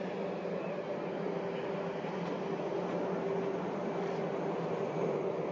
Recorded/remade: recorded